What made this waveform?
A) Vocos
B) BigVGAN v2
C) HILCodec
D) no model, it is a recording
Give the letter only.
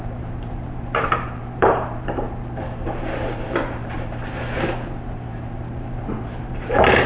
B